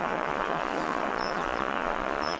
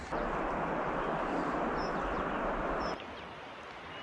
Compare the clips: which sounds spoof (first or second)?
first